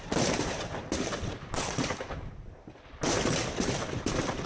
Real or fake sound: real